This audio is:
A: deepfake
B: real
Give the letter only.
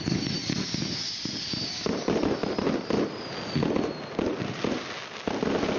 B